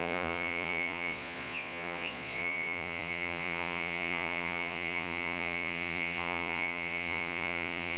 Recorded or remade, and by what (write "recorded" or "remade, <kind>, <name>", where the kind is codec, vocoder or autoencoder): remade, vocoder, Vocos